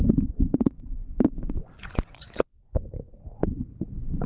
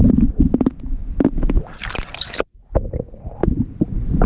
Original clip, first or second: second